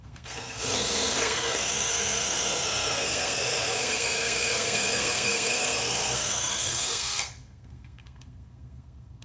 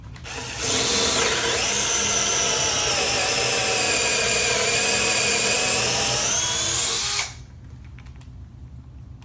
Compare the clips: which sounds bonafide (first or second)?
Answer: second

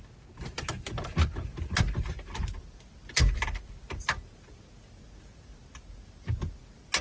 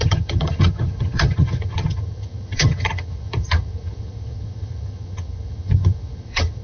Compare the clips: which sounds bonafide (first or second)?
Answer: first